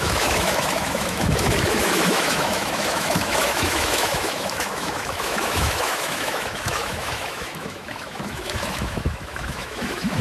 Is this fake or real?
fake